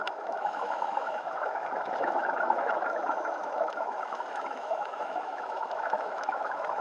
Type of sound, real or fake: fake